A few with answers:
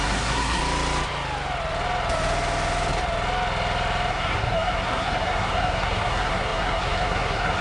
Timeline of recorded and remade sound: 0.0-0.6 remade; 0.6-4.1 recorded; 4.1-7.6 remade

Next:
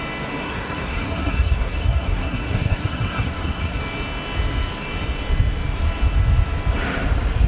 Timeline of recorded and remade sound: 0.0-0.4 recorded; 0.4-3.8 remade; 3.8-7.5 recorded

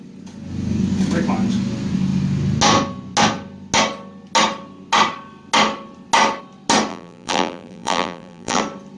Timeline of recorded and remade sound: 0.0-6.9 recorded; 6.9-8.6 remade; 8.6-9.0 recorded